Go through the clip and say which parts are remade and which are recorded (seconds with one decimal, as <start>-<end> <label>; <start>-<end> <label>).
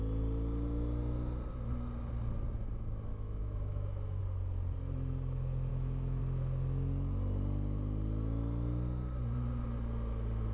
0.0-3.1 recorded; 3.1-4.2 remade; 4.2-5.7 recorded; 5.7-6.2 remade; 6.2-10.5 recorded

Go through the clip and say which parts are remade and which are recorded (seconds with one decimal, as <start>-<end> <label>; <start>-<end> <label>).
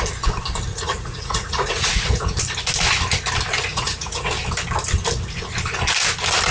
0.0-0.7 recorded; 0.7-2.4 remade; 2.4-3.7 recorded; 3.7-4.3 remade; 4.3-6.5 recorded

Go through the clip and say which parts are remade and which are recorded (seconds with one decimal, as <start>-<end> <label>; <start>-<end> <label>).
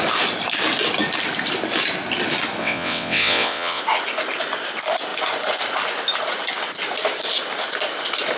0.0-2.6 recorded; 2.6-3.8 remade; 3.8-8.4 recorded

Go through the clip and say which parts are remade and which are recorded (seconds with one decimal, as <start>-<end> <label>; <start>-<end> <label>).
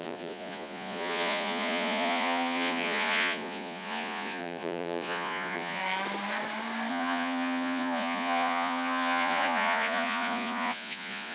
0.0-5.8 remade; 5.8-6.9 recorded; 6.9-11.3 remade